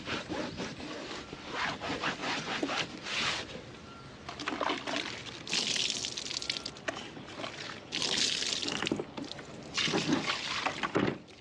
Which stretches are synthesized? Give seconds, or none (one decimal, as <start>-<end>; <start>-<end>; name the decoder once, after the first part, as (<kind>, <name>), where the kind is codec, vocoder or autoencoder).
2.2-2.7 (vocoder, Vocos)

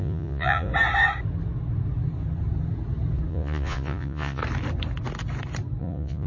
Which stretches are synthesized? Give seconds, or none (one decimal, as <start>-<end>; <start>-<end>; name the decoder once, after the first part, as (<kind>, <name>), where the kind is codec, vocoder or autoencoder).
0.0-0.7 (vocoder, Vocos); 3.3-4.4; 5.8-6.3

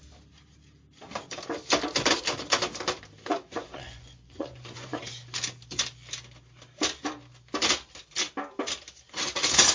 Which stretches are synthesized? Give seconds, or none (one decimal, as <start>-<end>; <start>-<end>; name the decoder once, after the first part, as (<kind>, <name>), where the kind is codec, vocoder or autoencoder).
3.3-5.0 (vocoder, Vocos)

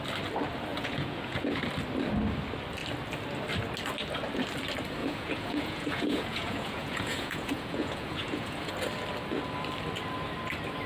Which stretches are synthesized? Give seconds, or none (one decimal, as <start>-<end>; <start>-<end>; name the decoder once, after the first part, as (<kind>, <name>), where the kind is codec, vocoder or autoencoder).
0.7-1.6 (vocoder, Vocos); 5.0-8.7

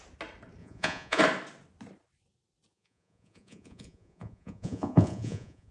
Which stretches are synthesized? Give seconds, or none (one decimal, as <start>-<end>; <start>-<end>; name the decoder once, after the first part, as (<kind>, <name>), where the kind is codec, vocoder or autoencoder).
0.6-1.2 (vocoder, Vocos); 2.7-5.7